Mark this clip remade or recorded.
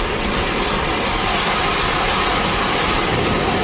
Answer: recorded